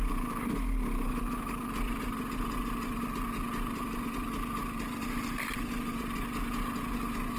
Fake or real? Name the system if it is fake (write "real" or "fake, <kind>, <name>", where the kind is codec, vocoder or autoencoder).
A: real